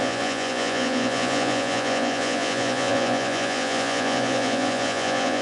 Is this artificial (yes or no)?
yes